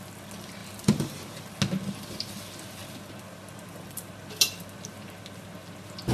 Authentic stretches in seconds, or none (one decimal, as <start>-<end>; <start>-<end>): 0.0-0.6; 1.5-6.1